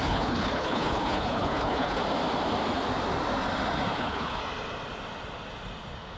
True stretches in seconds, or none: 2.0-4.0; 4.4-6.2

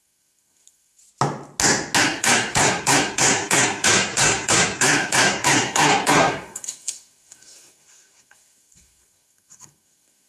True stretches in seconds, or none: 1.0-2.0